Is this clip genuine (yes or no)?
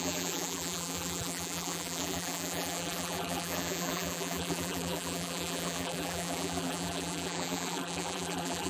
no